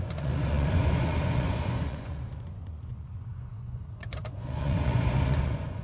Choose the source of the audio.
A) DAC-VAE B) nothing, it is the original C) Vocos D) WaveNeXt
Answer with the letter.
C